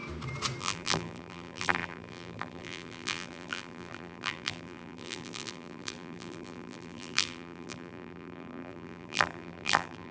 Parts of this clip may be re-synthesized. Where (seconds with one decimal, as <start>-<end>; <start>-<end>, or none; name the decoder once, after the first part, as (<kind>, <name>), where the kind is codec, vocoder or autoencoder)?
0.6-10.1 (vocoder, BigVGAN v2)